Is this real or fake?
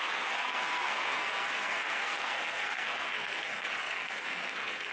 fake